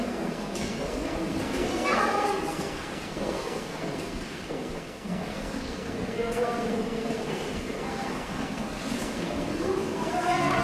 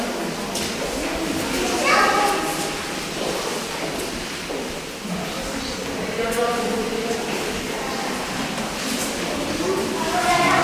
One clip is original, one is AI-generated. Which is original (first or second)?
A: second